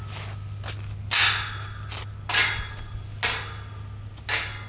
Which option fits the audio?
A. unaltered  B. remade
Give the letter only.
A